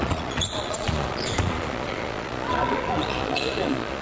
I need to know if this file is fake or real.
fake